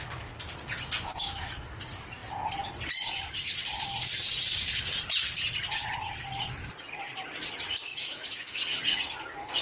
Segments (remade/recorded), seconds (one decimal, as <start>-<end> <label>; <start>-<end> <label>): 0.0-1.1 recorded; 1.1-1.8 remade; 1.8-7.9 recorded; 7.9-8.7 remade; 8.7-9.6 recorded